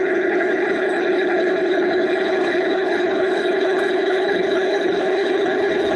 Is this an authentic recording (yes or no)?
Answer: no